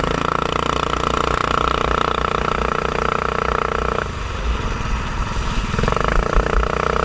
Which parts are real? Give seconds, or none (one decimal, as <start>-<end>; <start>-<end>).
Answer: 0.0-7.0